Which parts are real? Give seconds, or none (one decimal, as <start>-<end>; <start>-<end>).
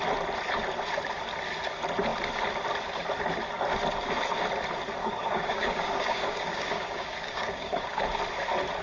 0.0-5.0; 8.0-8.8